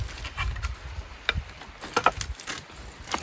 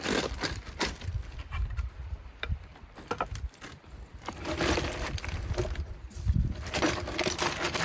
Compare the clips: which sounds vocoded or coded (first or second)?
second